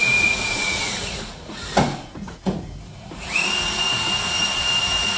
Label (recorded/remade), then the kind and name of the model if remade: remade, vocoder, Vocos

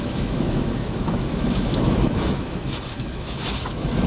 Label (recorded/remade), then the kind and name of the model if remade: remade, autoencoder, DAC-VAE